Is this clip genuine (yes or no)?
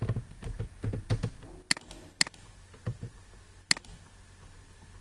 yes